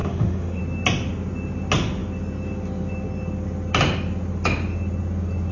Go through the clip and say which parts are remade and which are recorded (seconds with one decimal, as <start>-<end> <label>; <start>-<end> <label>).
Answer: 0.0-0.6 remade; 0.6-5.5 recorded